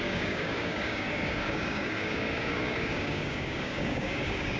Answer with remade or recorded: remade